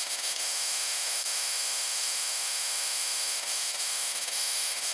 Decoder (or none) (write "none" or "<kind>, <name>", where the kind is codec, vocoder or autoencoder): autoencoder, DAC-VAE